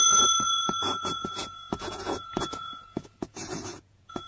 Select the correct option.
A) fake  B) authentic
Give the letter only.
A